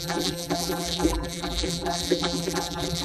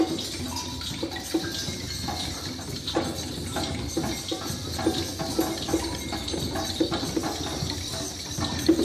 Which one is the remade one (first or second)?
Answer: first